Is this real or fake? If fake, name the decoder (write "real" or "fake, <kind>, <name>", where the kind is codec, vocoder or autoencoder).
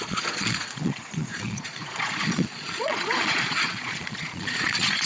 fake, vocoder, Vocos